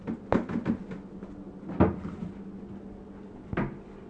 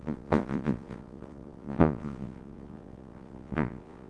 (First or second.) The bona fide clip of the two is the first